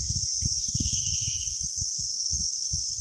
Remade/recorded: remade